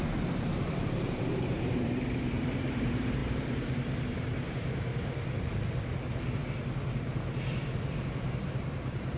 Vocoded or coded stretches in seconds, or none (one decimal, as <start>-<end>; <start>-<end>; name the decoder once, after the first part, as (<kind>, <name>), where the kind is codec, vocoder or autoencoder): 0.0-4.9 (vocoder, BigVGAN v2); 5.4-6.4; 7.6-9.2